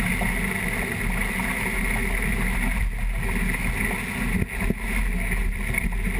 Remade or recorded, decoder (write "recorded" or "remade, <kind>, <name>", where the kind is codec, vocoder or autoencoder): recorded